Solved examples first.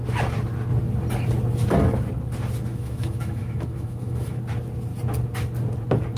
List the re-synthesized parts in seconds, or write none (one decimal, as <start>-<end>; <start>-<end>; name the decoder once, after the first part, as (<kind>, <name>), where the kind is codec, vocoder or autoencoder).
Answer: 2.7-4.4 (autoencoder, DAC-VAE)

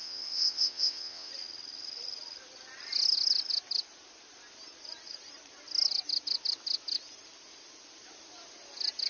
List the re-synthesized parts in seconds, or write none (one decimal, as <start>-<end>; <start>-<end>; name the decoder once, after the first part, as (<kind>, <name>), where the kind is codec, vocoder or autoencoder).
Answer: 0.0-1.3 (vocoder, WaveNeXt)

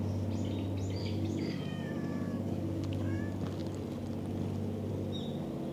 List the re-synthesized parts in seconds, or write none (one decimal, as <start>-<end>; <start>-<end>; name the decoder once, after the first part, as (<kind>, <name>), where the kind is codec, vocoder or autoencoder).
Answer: 1.0-3.2 (codec, DAC)